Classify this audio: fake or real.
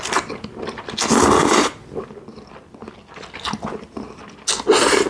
real